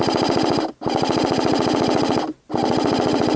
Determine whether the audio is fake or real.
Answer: real